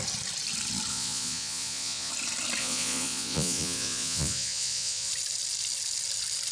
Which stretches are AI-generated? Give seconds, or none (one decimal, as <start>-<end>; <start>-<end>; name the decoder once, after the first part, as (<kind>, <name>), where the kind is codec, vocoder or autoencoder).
0.9-2.1 (vocoder, Vocos); 2.6-5.1